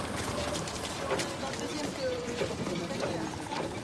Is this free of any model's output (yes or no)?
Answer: no